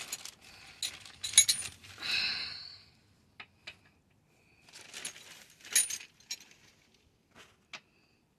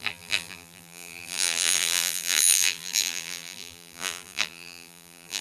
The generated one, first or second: second